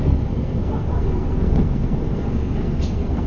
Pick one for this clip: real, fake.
fake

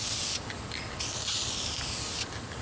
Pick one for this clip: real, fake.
real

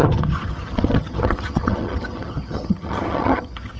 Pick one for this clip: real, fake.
fake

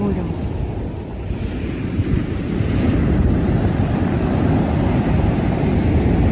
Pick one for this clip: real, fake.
real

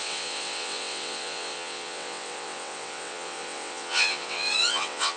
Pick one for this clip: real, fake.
fake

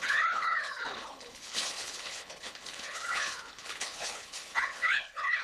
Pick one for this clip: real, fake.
fake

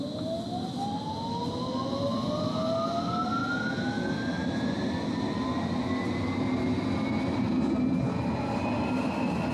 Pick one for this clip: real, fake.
real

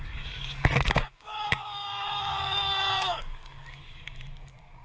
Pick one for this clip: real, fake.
fake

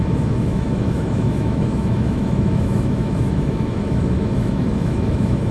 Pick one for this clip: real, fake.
fake